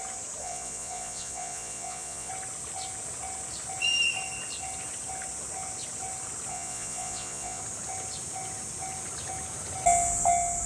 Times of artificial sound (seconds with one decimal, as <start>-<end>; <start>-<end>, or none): 0.4-2.3; 6.5-7.6